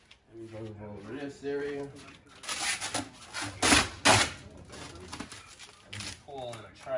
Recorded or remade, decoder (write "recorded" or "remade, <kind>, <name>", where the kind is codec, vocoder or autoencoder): recorded